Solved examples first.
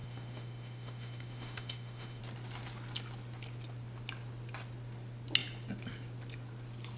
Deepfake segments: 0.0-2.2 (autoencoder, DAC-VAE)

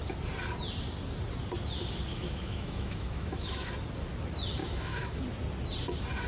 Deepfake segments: 2.1-3.7 (autoencoder, DAC-VAE); 4.6-5.2

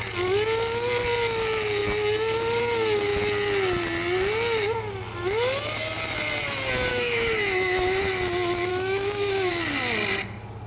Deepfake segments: 6.9-8.0 (autoencoder, DAC-VAE); 8.7-9.5

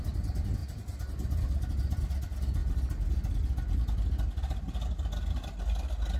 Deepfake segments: none

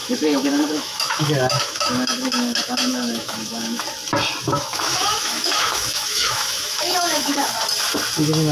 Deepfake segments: 0.0-3.8 (autoencoder, DAC-VAE); 4.4-7.5

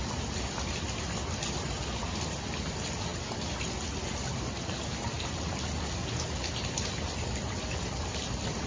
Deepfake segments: none

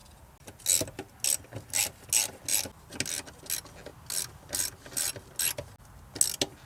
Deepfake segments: none

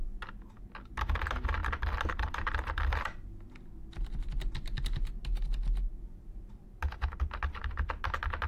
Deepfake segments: none